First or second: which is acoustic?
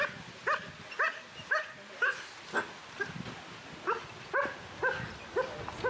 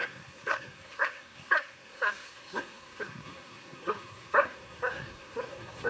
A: first